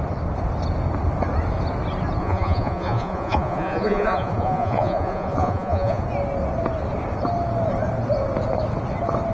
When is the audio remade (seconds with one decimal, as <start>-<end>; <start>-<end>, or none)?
2.2-6.0